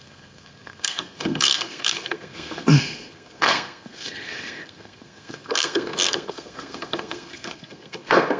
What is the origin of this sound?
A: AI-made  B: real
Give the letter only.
A